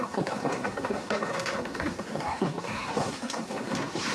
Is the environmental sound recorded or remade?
remade